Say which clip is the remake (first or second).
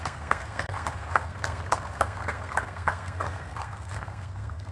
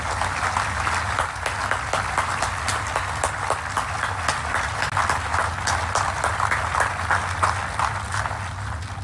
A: first